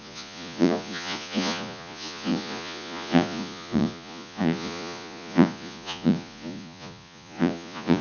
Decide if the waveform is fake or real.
fake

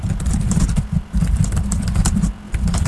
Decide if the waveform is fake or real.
fake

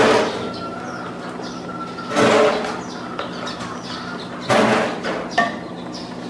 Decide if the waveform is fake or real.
real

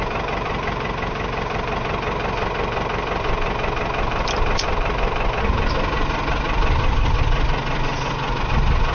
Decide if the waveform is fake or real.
fake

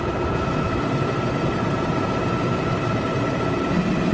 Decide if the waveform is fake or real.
real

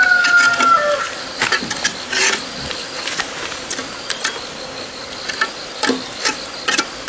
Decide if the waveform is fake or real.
real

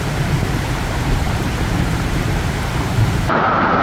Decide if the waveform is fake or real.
fake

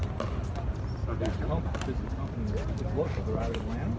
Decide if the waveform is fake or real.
real